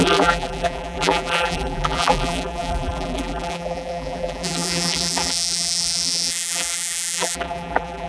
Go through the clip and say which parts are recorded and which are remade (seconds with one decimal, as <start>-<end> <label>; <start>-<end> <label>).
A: 0.0-8.1 remade